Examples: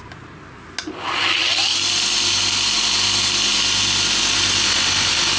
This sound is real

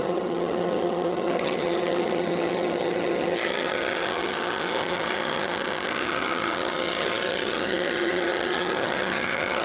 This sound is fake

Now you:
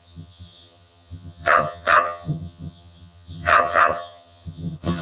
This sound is fake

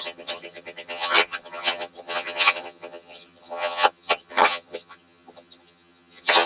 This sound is fake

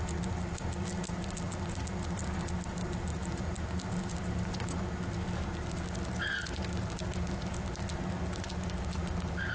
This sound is real